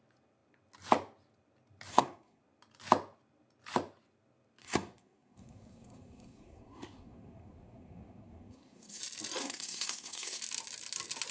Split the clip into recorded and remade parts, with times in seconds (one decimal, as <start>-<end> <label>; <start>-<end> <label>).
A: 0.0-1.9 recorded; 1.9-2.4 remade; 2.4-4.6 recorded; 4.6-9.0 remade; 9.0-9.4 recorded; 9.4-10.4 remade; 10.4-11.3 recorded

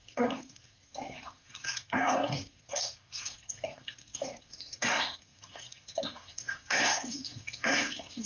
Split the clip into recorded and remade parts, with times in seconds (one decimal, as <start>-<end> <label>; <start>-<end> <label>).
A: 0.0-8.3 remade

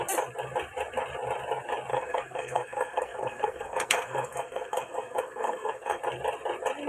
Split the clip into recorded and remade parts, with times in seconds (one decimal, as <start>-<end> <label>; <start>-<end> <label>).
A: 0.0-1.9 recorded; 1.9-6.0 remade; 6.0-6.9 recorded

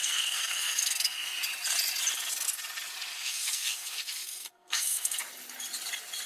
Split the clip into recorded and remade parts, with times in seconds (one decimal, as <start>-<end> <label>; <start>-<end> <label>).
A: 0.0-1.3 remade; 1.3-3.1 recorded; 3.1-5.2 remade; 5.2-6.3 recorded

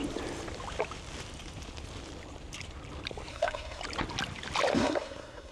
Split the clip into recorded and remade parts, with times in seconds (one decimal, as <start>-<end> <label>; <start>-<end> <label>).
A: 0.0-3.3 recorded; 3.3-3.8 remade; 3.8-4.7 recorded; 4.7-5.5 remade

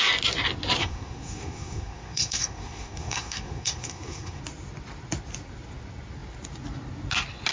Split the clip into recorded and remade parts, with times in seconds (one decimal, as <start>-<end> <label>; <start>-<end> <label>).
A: 0.0-0.8 recorded; 0.8-4.4 remade; 4.4-7.5 recorded

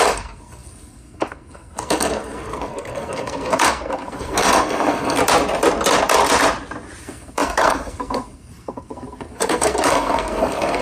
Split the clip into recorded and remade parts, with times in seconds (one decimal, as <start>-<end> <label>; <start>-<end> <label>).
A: 0.0-5.2 remade; 5.2-7.0 recorded; 7.0-10.8 remade